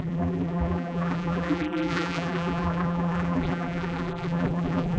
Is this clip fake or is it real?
fake